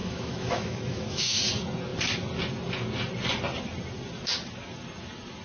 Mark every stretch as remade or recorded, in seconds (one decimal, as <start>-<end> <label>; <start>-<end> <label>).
0.0-1.5 remade; 1.5-5.4 recorded